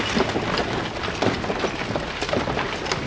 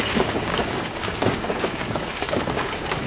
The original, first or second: first